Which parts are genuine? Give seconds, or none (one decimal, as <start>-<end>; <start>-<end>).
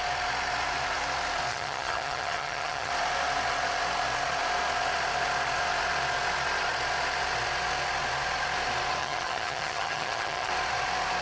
0.0-1.5; 2.9-9.0; 10.5-11.2